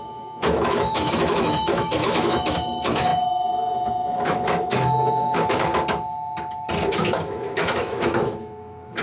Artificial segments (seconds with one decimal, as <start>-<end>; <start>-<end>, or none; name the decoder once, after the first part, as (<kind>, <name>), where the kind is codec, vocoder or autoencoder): 0.0-5.7 (autoencoder, DAC-VAE); 6.9-9.0

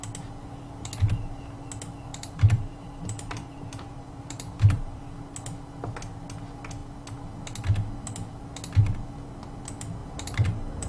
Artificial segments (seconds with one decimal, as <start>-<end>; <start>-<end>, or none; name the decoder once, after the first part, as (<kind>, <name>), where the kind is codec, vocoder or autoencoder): 2.1-5.0 (vocoder, BigVGAN v2); 10.0-10.9